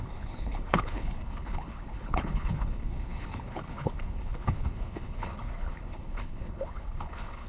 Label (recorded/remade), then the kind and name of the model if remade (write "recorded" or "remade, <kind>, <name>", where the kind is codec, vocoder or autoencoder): remade, codec, HILCodec